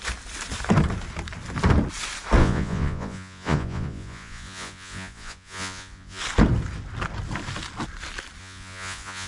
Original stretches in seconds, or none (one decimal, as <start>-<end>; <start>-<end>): 0.0-2.4; 6.2-8.4